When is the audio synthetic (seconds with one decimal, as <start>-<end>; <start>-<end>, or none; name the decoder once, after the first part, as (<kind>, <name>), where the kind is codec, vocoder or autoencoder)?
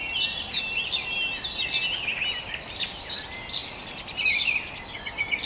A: none